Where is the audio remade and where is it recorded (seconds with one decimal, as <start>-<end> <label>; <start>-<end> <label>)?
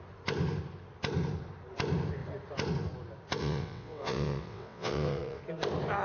0.0-3.4 recorded; 3.4-5.4 remade; 5.4-6.0 recorded